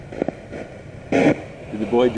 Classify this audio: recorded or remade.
recorded